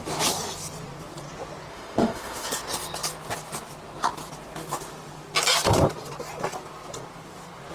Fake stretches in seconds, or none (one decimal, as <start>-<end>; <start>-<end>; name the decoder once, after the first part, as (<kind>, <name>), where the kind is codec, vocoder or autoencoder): 1.7-2.5 (autoencoder, DAC-VAE)